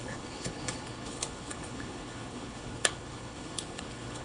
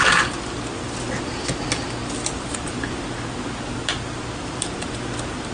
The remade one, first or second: first